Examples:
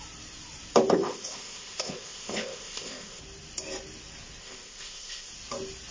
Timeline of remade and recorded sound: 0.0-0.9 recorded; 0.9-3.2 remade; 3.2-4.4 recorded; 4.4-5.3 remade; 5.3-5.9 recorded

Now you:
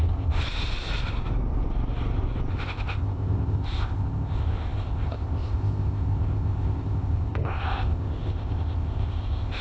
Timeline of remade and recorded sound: 0.0-0.4 remade; 0.4-2.5 recorded; 2.5-9.6 remade

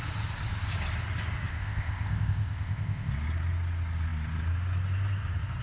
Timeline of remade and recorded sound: 0.0-1.5 recorded; 1.5-3.1 remade; 3.1-5.6 recorded

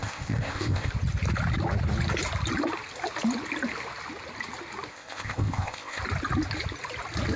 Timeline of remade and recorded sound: 0.0-0.9 remade; 0.9-4.9 recorded; 4.9-6.0 remade; 6.0-7.4 recorded